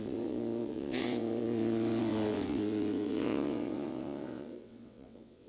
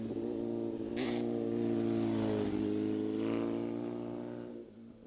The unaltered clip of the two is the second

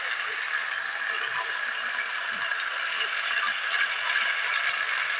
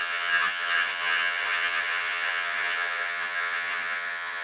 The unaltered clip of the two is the first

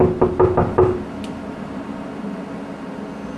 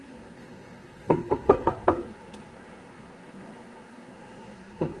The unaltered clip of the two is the first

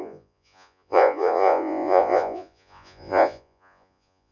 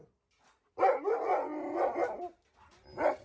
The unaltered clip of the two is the second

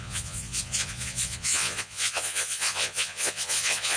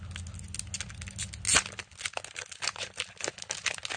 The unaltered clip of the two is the second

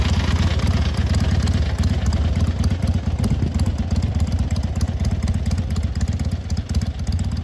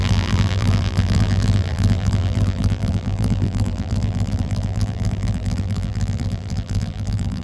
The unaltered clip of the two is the first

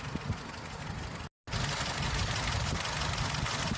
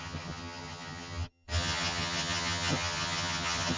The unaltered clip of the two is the first